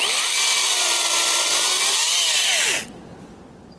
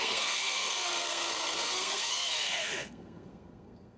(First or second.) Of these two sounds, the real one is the first